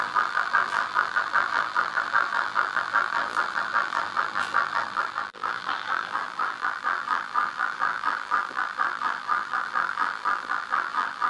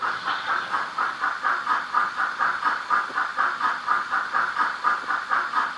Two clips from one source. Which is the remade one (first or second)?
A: first